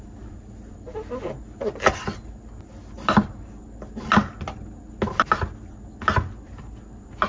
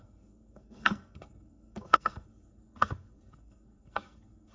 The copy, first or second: second